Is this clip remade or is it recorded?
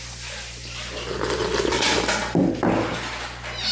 recorded